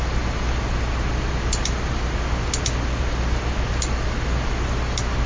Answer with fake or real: real